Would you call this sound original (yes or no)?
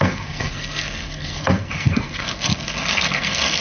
no